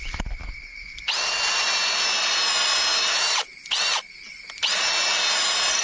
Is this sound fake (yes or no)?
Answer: no